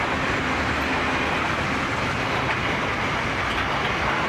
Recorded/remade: recorded